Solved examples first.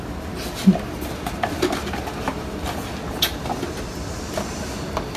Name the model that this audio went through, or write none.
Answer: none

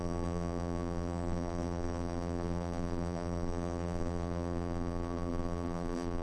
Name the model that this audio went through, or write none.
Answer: vocoder, BigVGAN v2